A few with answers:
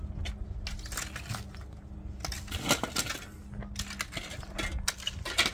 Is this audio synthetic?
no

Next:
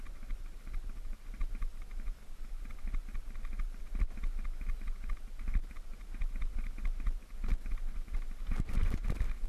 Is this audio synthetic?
no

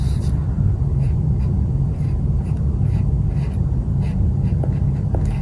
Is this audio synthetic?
no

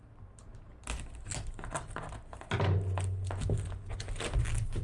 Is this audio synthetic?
no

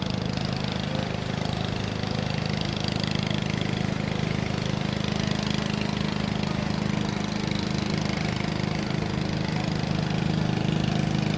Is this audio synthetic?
no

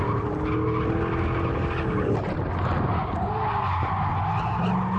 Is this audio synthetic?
no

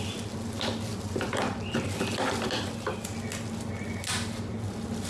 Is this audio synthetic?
no